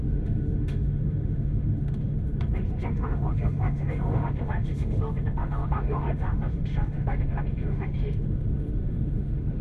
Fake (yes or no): yes